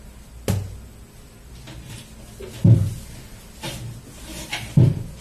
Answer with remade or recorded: recorded